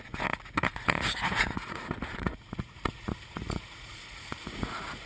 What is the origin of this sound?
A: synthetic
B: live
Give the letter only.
A